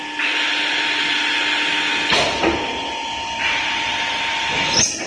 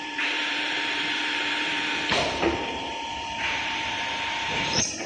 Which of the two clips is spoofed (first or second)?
second